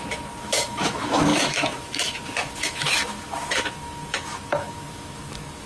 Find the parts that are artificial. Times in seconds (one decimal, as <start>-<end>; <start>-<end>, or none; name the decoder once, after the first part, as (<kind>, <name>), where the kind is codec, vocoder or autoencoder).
0.0-5.7 (autoencoder, DAC-VAE)